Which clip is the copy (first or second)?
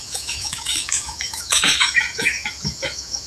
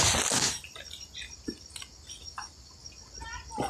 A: first